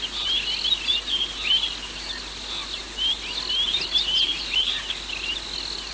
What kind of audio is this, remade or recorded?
recorded